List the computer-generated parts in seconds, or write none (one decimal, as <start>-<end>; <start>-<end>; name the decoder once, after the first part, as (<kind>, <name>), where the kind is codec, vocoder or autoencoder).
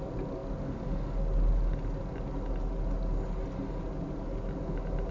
none